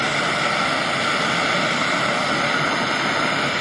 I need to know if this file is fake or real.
real